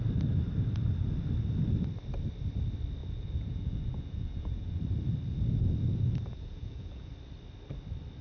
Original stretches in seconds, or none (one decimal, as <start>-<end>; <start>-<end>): 0.0-3.0; 4.8-6.3; 7.1-8.2

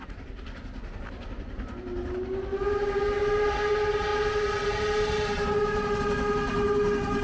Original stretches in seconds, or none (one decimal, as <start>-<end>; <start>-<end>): 0.0-7.2

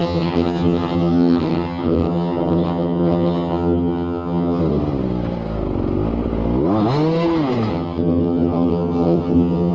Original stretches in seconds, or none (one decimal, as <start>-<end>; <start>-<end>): 4.6-7.7

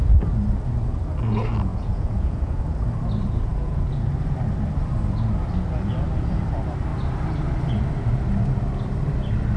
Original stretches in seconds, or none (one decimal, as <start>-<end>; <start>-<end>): 0.0-1.7; 2.6-3.5; 4.1-9.6

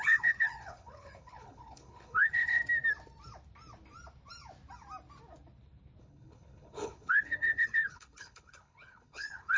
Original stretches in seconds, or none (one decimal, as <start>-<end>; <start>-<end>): 2.6-6.0

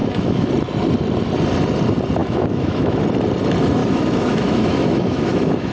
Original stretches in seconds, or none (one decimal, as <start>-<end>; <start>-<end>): 0.5-2.2; 3.0-3.8

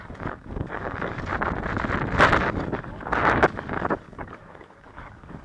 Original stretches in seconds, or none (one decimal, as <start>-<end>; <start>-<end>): 1.3-2.4

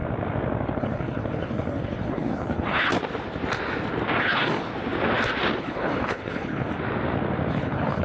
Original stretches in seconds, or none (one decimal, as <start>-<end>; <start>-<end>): 0.0-0.8; 2.9-4.2; 4.7-5.6; 6.7-7.5